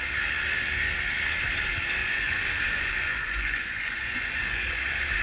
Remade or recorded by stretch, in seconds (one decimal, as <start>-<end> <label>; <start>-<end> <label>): 0.0-2.0 recorded; 2.0-4.8 remade; 4.8-5.2 recorded